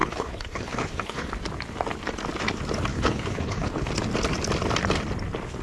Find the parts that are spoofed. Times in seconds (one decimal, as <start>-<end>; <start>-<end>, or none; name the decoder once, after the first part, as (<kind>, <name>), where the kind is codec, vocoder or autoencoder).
0.0-1.3 (codec, HILCodec); 2.9-3.9